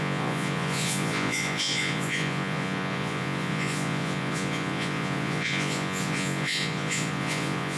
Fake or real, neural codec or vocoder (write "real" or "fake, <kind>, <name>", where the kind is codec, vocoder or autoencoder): fake, vocoder, Vocos